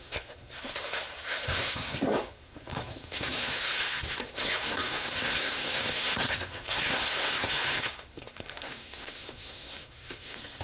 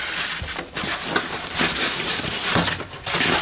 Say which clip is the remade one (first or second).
first